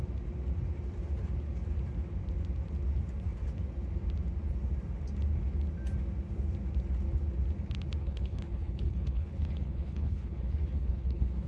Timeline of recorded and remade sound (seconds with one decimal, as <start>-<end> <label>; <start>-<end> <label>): 0.0-8.0 recorded; 8.0-11.5 remade